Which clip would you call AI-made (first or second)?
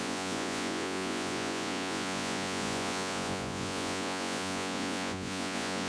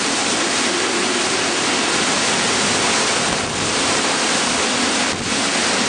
first